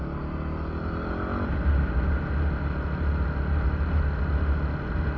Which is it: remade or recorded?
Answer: recorded